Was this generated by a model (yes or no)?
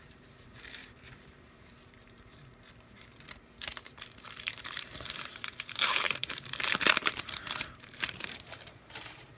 yes